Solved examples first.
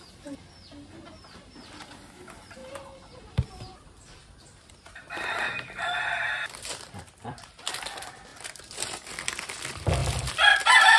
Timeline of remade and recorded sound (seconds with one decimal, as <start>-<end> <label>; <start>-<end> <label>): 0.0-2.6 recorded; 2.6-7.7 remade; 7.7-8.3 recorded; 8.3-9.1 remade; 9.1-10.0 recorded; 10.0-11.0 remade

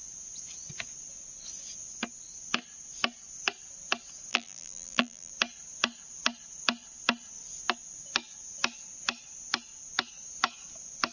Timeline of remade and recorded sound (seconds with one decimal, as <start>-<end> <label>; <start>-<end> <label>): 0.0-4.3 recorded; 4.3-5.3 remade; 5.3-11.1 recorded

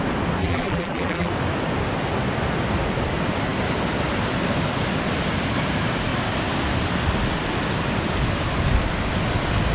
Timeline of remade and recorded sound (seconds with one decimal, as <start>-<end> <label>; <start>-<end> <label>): 0.0-0.4 recorded; 0.4-1.3 remade; 1.3-9.7 recorded